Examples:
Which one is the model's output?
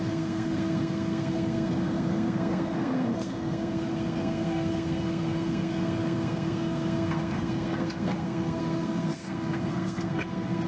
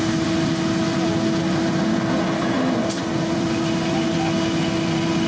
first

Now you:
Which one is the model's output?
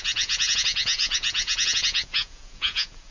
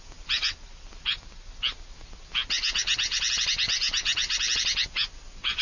first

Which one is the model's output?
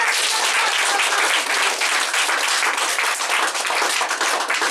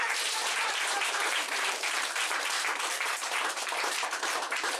second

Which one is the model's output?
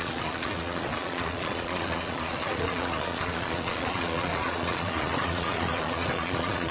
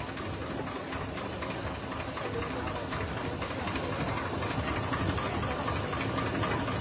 first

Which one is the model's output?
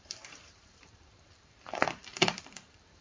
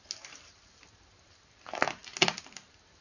first